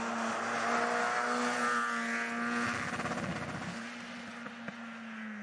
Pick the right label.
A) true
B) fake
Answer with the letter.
A